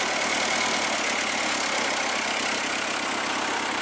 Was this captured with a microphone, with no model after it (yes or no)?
yes